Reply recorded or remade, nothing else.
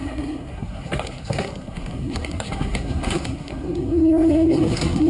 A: remade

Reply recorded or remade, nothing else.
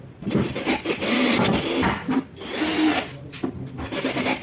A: recorded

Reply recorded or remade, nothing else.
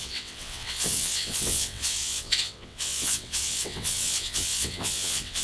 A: remade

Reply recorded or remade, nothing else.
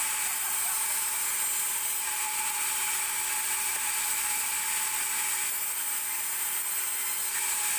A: recorded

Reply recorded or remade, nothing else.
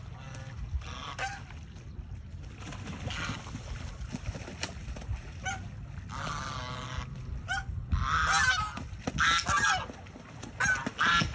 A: recorded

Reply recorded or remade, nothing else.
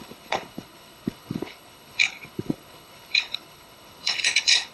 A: remade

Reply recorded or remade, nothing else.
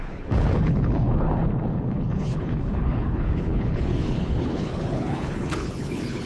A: remade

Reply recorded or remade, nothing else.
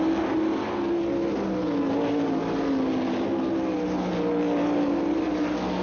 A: recorded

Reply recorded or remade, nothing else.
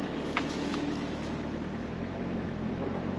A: remade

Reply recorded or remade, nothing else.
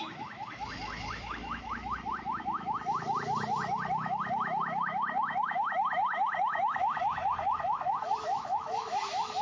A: remade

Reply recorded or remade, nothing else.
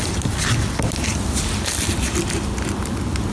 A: recorded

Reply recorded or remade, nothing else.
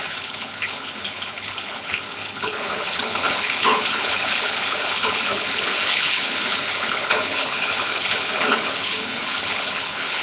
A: remade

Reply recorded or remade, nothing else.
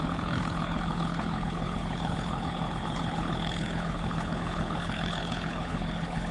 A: remade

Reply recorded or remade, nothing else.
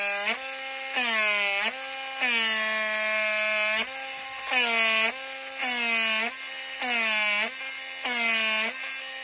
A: recorded